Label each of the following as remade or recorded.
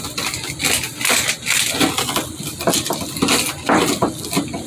recorded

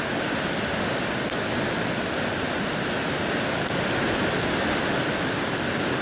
recorded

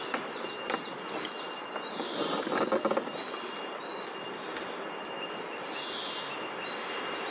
recorded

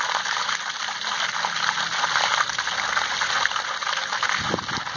recorded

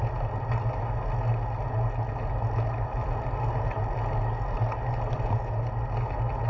recorded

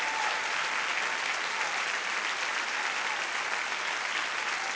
recorded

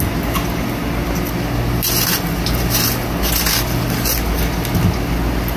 recorded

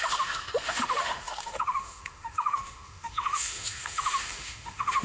remade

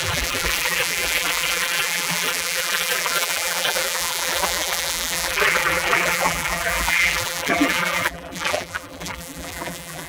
remade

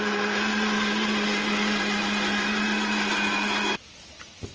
recorded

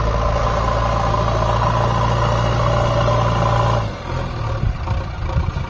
recorded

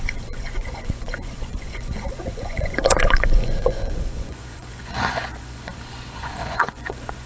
remade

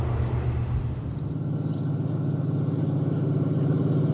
recorded